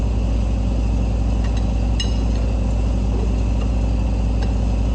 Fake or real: real